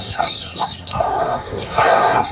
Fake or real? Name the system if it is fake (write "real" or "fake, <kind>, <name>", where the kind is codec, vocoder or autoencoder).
fake, codec, SNAC